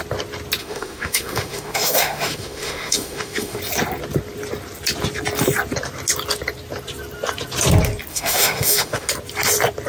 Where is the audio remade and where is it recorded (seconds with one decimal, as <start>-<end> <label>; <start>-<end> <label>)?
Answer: 0.0-0.6 recorded; 0.6-3.6 remade; 3.6-8.1 recorded; 8.1-9.1 remade; 9.1-9.9 recorded